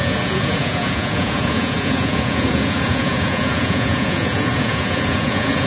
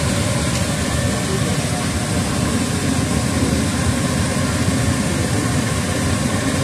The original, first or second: second